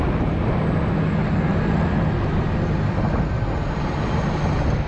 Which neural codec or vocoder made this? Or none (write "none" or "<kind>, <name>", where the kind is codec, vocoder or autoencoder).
none